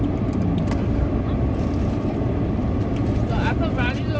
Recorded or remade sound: remade